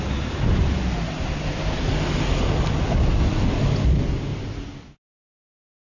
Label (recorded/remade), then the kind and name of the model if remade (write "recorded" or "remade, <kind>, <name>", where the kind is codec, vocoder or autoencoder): recorded